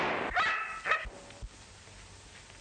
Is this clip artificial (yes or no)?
no